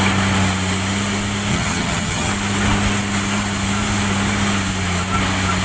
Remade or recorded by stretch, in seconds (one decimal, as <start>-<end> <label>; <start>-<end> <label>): 0.0-1.5 recorded; 1.5-2.3 remade; 2.3-5.6 recorded